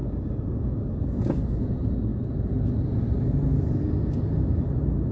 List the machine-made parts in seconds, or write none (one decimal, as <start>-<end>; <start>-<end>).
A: none

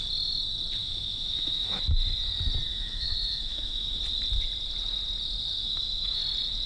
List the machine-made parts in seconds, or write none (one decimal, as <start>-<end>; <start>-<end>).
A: 0.8-1.8; 2.7-4.0; 5.6-6.2

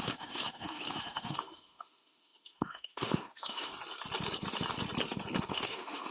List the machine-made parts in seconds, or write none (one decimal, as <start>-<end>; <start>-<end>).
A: 0.0-3.7; 5.5-6.1